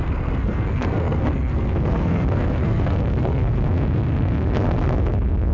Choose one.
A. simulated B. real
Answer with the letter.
A